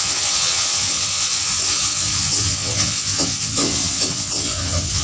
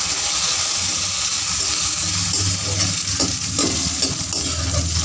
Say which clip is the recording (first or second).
second